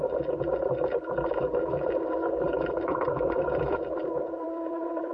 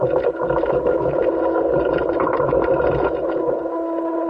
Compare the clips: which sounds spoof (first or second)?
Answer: first